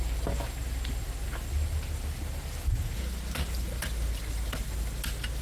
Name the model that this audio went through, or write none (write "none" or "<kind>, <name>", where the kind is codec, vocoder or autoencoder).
none